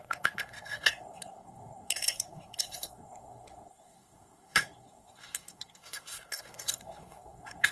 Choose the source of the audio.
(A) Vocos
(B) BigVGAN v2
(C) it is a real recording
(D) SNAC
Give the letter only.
D